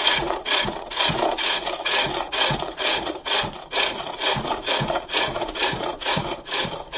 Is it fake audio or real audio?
fake